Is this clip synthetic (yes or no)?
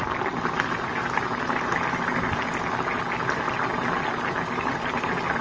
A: no